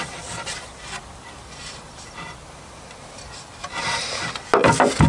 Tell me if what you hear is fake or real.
real